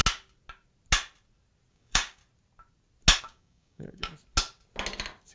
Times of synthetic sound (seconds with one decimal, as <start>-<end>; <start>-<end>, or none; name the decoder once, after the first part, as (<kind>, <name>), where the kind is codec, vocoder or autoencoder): 1.7-2.2 (codec, DAC); 3.2-4.1